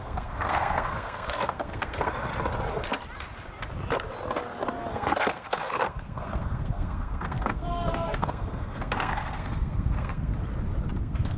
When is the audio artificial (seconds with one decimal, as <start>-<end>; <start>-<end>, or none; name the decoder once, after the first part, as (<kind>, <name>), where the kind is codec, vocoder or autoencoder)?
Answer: 0.0-2.3 (codec, SNAC); 4.9-10.3; 11.0-11.4